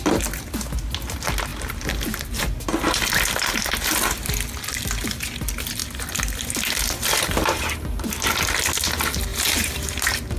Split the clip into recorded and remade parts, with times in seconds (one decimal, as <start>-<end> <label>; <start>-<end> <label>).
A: 0.0-1.5 recorded; 1.5-2.6 remade; 2.6-9.3 recorded; 9.3-10.4 remade